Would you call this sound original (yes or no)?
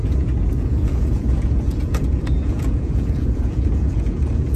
no